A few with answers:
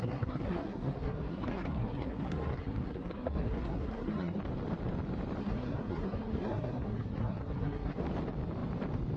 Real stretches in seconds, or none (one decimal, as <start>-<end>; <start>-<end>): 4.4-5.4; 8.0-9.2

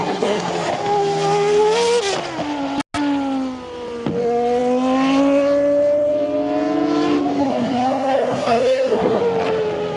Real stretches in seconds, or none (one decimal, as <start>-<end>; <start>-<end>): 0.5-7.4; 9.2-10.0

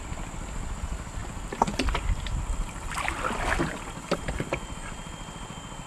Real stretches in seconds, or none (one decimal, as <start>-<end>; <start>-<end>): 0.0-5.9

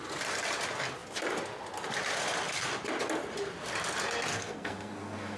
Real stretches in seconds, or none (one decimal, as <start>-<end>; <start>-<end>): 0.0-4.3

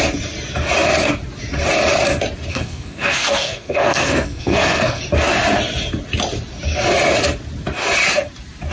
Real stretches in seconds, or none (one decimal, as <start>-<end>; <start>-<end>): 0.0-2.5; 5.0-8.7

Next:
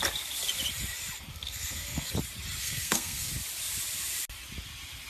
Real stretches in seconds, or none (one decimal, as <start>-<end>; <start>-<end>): 0.0-1.3; 2.1-2.6; 3.3-5.1